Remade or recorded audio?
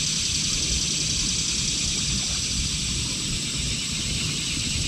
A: recorded